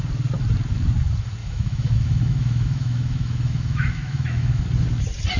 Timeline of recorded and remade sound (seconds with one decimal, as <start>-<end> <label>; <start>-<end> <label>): 0.0-1.4 recorded; 1.4-4.6 remade; 4.6-5.4 recorded